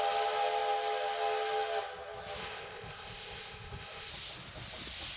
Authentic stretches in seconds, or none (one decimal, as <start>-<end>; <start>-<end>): 0.0-2.4; 4.1-5.2